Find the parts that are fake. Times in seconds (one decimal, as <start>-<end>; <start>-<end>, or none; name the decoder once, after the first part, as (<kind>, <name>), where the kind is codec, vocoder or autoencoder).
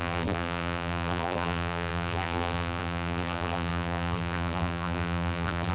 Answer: 0.0-5.7 (vocoder, BigVGAN v2)